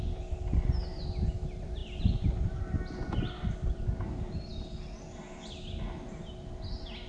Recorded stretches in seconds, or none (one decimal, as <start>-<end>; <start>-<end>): 0.0-7.1